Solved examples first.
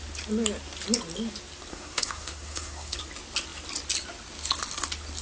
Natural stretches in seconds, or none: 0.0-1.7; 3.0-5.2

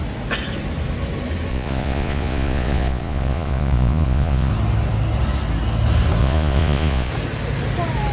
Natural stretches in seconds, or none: 0.0-1.5; 4.5-6.2; 7.1-8.1

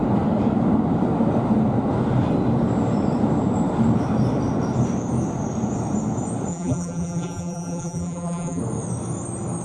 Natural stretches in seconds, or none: 0.0-6.5; 8.6-9.6

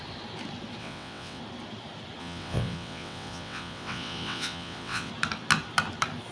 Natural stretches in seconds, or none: 0.0-0.8; 1.4-2.2; 5.1-6.3

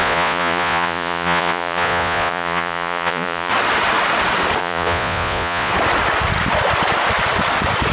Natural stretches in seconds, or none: 3.5-4.6; 5.7-7.9

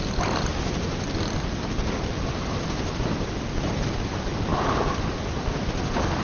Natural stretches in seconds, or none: 4.5-5.5

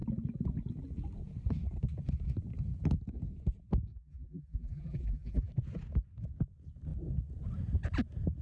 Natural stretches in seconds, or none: 0.0-3.9; 5.5-8.4

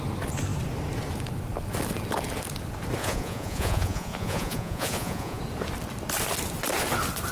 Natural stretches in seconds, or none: 0.0-3.0; 5.4-7.3